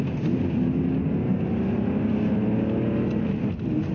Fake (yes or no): no